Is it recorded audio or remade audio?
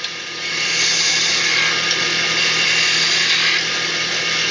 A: recorded